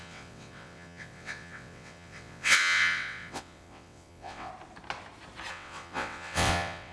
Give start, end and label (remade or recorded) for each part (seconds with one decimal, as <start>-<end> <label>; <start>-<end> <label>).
0.0-4.5 remade; 4.5-5.5 recorded; 5.5-6.9 remade